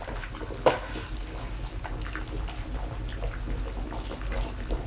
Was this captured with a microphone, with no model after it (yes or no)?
yes